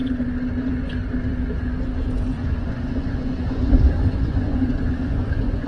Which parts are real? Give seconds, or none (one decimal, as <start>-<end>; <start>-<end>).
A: 0.0-2.3